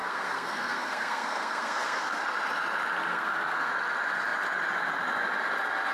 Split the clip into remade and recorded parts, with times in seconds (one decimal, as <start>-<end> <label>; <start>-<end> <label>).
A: 0.0-2.2 remade; 2.2-3.1 recorded; 3.1-3.7 remade; 3.7-5.9 recorded